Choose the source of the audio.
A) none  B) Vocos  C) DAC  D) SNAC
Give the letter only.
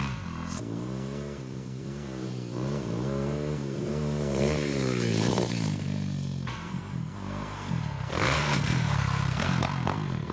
D